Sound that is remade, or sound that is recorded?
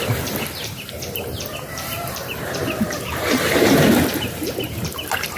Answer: remade